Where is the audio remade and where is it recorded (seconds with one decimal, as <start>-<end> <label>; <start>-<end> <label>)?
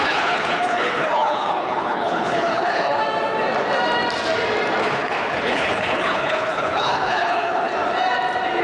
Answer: 0.0-3.0 remade; 3.0-4.8 recorded; 4.8-7.7 remade; 7.7-8.6 recorded